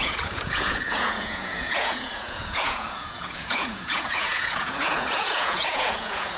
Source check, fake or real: fake